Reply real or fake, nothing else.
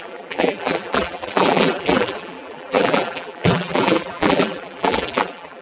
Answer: fake